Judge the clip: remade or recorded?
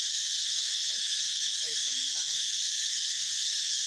remade